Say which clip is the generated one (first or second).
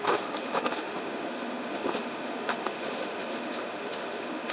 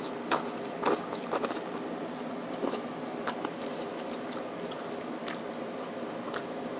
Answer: first